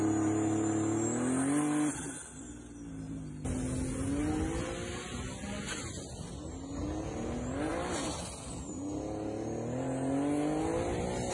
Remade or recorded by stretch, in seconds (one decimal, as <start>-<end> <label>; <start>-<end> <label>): 0.0-11.3 recorded